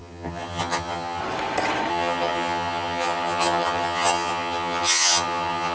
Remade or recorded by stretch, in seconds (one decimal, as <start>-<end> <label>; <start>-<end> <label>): 0.0-1.2 remade; 1.2-1.9 recorded; 1.9-5.7 remade